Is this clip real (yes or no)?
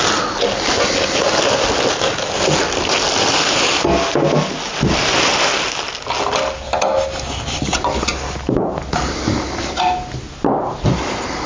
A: yes